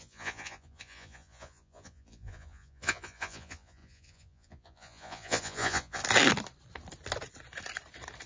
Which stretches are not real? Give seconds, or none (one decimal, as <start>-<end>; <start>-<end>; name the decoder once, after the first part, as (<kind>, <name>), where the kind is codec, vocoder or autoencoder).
0.0-6.0 (vocoder, Vocos)